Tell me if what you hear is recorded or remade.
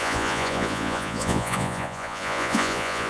remade